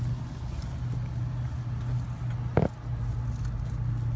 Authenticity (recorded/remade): recorded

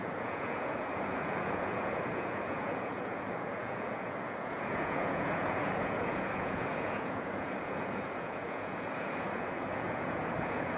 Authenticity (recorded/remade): remade